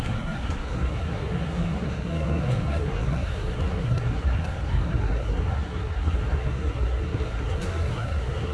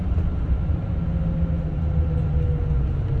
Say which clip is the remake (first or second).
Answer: first